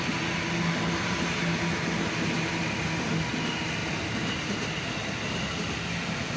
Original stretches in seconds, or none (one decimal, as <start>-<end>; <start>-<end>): 0.0-3.8; 4.8-6.4